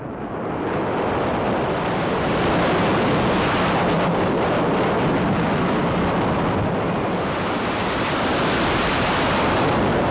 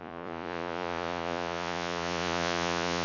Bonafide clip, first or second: first